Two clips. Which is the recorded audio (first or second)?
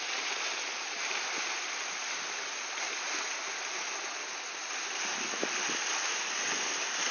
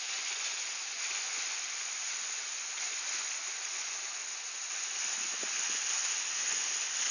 first